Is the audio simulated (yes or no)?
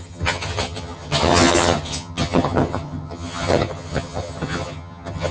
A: yes